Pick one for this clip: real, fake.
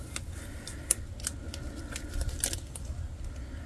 real